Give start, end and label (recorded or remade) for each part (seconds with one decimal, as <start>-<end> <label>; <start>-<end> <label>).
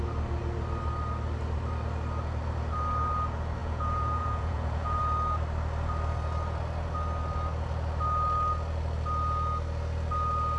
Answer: 0.0-3.6 recorded; 3.6-5.0 remade; 5.0-10.6 recorded